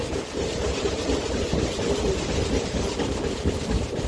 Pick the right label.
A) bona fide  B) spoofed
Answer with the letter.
B